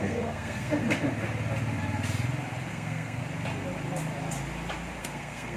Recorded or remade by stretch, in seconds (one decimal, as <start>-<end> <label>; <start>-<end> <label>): 0.0-0.8 remade; 0.8-2.7 recorded; 2.7-3.2 remade; 3.2-5.0 recorded; 5.0-5.6 remade